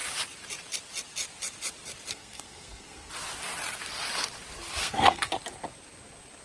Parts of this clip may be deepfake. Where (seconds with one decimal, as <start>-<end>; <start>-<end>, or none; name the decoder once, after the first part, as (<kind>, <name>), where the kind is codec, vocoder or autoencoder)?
2.1-3.1 (codec, SNAC); 4.8-5.3